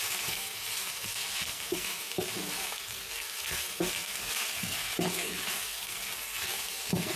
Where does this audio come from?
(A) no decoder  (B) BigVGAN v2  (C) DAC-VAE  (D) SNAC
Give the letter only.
D